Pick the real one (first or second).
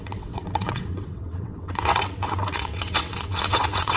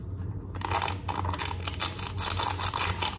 second